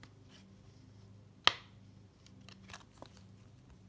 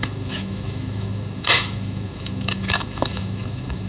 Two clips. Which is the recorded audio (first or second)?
first